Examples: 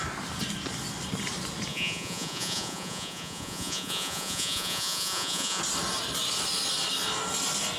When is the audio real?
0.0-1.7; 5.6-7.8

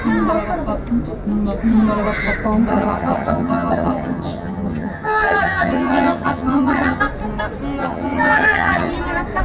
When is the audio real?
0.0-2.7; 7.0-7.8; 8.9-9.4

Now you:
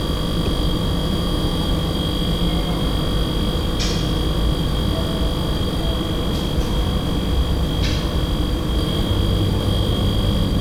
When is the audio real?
0.0-1.0; 1.7-10.6

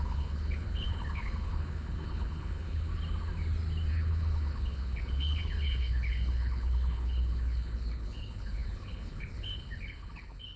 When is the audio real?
2.9-3.9